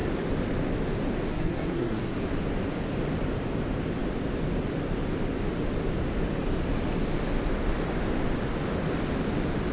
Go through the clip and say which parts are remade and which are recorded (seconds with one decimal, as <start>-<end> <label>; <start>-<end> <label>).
0.0-1.3 recorded; 1.3-2.2 remade; 2.2-9.7 recorded